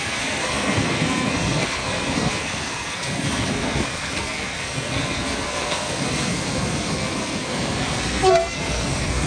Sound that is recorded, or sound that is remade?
remade